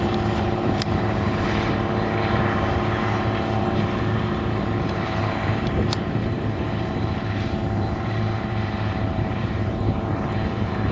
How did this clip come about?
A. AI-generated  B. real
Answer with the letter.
A